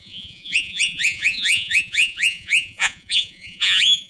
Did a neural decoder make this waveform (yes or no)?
yes